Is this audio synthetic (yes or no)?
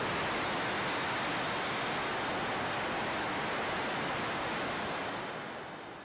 no